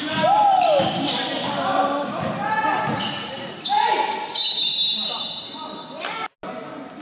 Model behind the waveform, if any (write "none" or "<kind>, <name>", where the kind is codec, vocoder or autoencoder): none